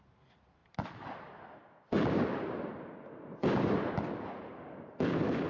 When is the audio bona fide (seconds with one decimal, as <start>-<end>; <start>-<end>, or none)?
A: 0.0-5.5